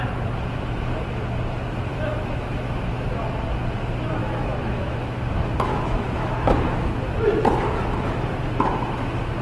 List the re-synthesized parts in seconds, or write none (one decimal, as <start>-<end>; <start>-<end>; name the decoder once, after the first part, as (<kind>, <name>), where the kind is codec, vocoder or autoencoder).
1.9-3.2 (autoencoder, DAC-VAE); 4.2-5.2; 5.7-7.0